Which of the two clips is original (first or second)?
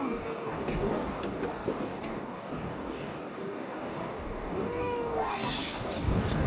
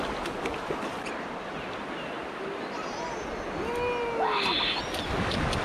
second